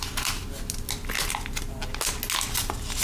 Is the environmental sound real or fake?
real